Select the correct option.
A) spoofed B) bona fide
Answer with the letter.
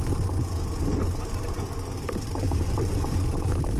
B